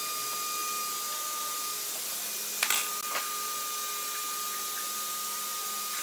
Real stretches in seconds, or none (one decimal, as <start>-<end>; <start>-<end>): 0.0-6.0